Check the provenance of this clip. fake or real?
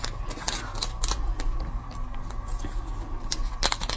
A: real